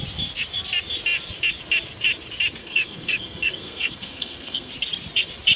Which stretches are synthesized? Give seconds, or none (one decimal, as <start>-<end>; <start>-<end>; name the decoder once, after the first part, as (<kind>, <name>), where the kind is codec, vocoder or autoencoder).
2.6-4.7 (codec, SNAC)